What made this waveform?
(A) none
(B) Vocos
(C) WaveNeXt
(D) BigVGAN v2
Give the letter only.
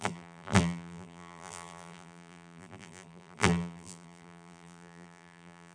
D